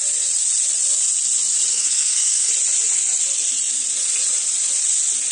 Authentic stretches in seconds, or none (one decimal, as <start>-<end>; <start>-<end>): 0.0-1.7; 2.5-5.3